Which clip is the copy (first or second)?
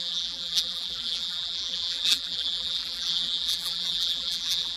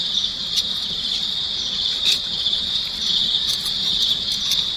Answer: first